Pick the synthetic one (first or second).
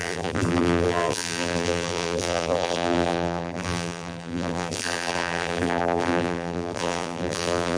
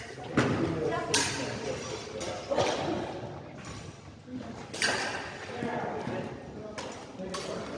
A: first